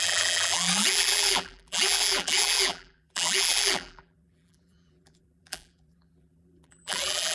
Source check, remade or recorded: remade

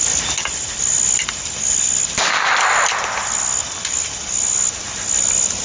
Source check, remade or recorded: recorded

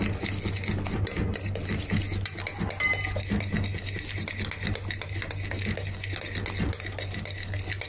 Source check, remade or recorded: recorded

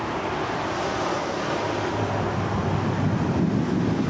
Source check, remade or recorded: recorded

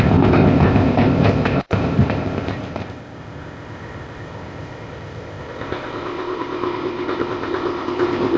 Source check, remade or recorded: remade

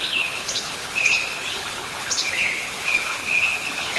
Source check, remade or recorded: remade